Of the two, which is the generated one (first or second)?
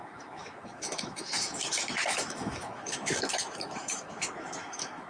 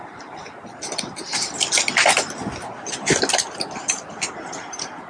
first